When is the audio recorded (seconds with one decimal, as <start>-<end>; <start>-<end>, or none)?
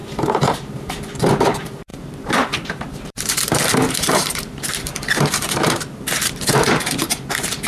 none